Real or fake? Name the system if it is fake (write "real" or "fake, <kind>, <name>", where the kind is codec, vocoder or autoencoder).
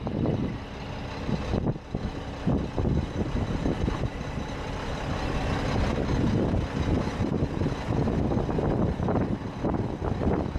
real